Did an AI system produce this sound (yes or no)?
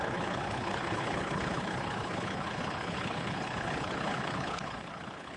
yes